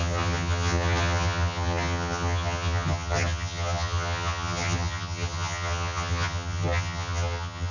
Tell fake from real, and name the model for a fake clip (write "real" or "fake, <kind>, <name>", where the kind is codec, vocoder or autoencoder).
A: fake, vocoder, HiFi-GAN